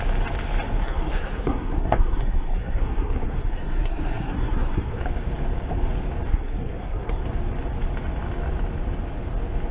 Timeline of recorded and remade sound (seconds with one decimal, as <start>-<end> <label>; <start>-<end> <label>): 0.0-0.8 recorded; 0.8-5.0 remade; 5.0-6.3 recorded; 6.3-7.2 remade; 7.2-9.7 recorded